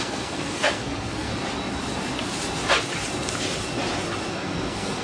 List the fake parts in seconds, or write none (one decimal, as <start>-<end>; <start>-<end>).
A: 0.0-1.3; 4.3-5.0